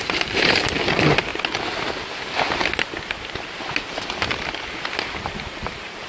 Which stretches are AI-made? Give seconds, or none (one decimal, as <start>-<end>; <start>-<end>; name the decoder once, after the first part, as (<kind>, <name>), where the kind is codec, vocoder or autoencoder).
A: 0.0-1.3 (vocoder, BigVGAN v2); 5.0-6.1